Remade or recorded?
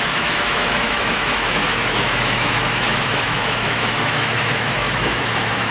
remade